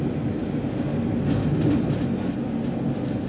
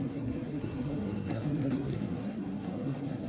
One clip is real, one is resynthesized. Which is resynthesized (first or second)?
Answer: second